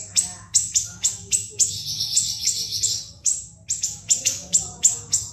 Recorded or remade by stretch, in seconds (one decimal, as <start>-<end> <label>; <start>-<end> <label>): 0.0-3.3 remade; 3.3-3.8 recorded; 3.8-5.3 remade